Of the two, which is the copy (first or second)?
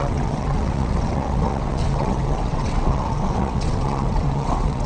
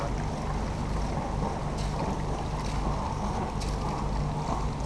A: first